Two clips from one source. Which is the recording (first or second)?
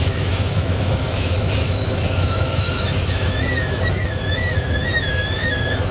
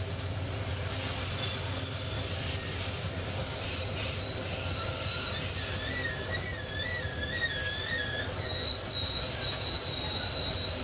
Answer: second